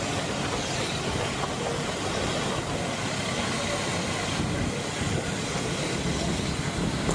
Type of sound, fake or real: real